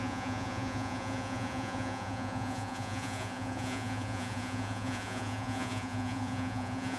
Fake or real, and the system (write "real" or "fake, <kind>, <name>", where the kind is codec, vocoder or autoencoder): fake, vocoder, Vocos